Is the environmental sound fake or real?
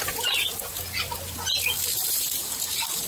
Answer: real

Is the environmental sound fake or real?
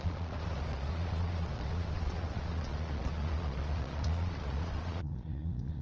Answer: fake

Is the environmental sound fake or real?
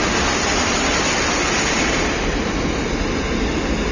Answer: real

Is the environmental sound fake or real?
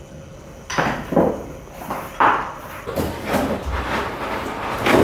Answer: real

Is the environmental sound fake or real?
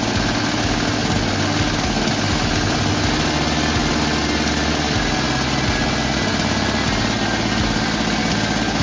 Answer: real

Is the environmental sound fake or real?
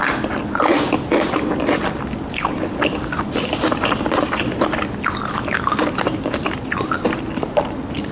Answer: real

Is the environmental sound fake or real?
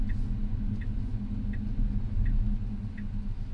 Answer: real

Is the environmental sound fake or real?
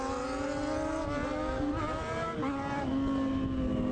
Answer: real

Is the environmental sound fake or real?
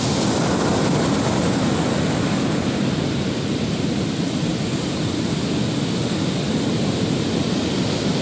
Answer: real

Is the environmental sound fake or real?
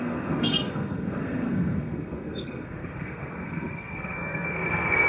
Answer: fake